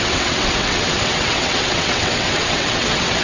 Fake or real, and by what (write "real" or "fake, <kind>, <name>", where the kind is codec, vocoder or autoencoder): fake, vocoder, WaveNeXt